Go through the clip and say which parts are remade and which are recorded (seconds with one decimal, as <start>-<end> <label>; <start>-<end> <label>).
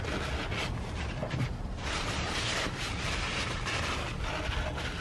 0.0-1.2 recorded; 1.2-4.2 remade; 4.2-5.0 recorded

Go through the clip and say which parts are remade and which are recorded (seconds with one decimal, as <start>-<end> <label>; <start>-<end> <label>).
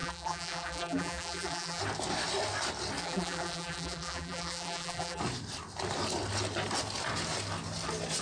0.0-1.8 remade; 1.8-3.0 recorded; 3.0-5.2 remade; 5.2-8.2 recorded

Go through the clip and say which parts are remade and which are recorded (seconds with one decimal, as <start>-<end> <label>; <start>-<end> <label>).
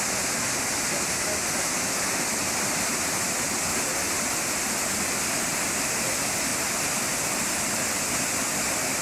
0.0-3.7 recorded; 3.7-4.4 remade; 4.4-6.5 recorded; 6.5-7.7 remade; 7.7-9.0 recorded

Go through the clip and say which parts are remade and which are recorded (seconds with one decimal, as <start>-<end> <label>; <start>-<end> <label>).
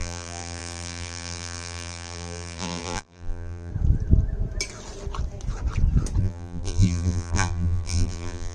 0.0-3.7 remade; 3.7-6.2 recorded; 6.2-8.5 remade